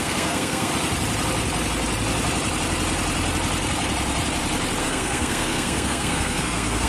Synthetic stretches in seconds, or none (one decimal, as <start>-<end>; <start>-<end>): 0.0-0.7; 4.8-6.9